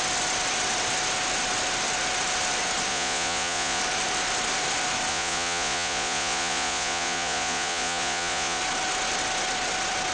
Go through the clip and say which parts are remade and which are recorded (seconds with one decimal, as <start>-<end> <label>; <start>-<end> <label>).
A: 0.0-2.9 recorded; 2.9-3.8 remade; 3.8-5.1 recorded; 5.1-8.6 remade; 8.6-10.1 recorded